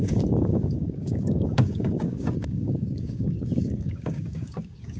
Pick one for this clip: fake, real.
fake